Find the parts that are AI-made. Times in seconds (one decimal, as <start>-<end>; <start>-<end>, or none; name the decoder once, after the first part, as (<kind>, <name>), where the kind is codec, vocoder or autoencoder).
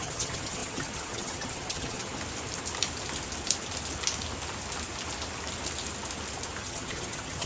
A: 0.0-2.1 (vocoder, HiFi-GAN); 6.6-7.5